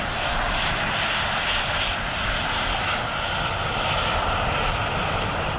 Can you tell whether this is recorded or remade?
recorded